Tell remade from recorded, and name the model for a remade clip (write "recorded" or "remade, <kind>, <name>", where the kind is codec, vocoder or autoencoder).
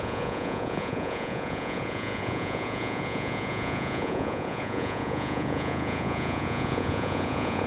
remade, vocoder, Vocos